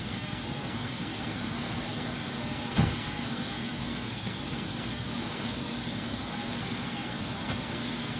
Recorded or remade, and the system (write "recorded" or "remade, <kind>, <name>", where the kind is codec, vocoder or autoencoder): remade, codec, SNAC